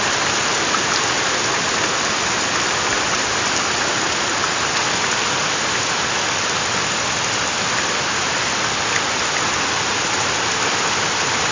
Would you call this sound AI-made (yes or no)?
no